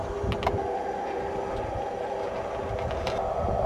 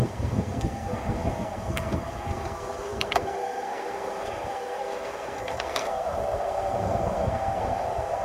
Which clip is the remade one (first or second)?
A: second